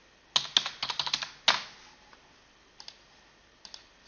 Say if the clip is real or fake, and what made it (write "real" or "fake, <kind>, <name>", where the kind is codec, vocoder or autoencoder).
real